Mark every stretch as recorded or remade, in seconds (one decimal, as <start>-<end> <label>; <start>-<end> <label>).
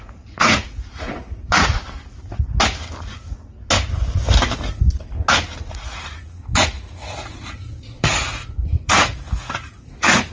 0.0-1.8 remade; 1.8-5.7 recorded; 5.7-10.3 remade